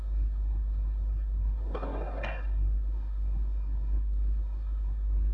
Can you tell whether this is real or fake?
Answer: fake